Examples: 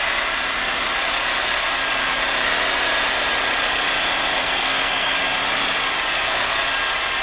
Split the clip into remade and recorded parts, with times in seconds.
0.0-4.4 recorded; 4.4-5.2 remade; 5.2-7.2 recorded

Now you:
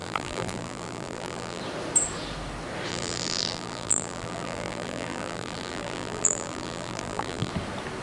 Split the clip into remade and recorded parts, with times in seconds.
0.0-1.6 remade; 1.6-2.9 recorded; 2.9-7.5 remade; 7.5-8.0 recorded

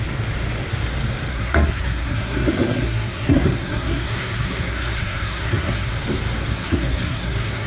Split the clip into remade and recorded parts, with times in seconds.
0.0-1.3 recorded; 1.3-5.9 remade; 5.9-6.5 recorded; 6.5-7.7 remade

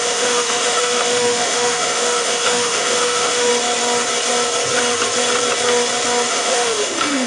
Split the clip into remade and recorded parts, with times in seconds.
0.0-3.5 remade; 3.5-6.3 recorded; 6.3-7.3 remade